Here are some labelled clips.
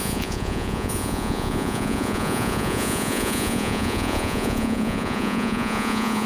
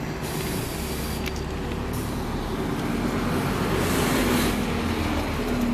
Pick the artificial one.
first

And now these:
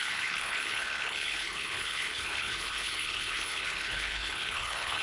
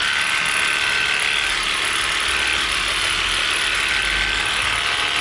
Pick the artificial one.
first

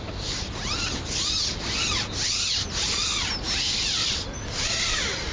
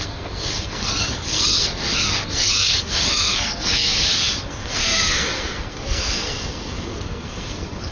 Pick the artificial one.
second